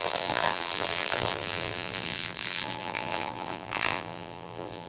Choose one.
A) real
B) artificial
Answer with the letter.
B